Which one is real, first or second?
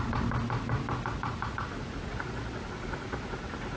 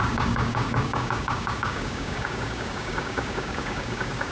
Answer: first